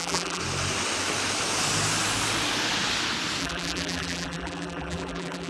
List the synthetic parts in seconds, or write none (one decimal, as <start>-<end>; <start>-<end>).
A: 0.0-0.4; 3.4-5.5